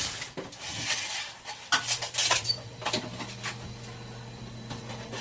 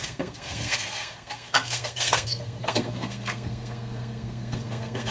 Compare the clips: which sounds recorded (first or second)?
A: first